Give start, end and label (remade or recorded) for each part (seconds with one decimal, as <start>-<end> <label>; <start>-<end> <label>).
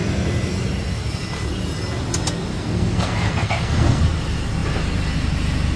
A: 0.0-2.5 recorded; 2.5-4.0 remade; 4.0-5.8 recorded